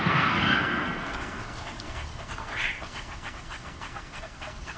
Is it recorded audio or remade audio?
remade